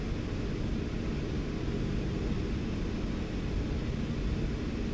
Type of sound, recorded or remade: recorded